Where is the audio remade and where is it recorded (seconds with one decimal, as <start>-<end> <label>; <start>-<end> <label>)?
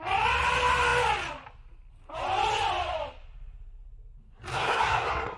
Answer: 0.0-4.5 recorded; 4.5-5.4 remade